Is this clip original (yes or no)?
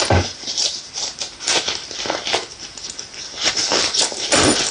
yes